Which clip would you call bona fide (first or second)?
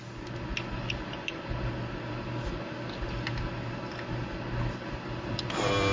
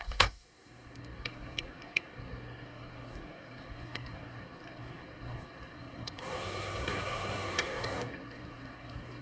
first